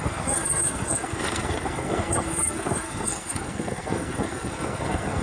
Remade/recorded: remade